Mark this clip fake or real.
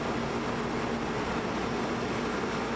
real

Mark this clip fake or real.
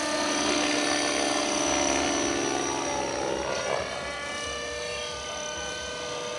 real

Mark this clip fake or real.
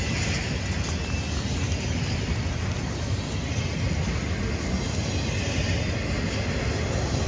real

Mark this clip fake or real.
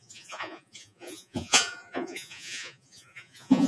fake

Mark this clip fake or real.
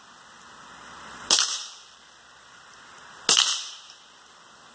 real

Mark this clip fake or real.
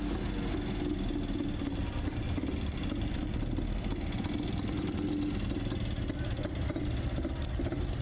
real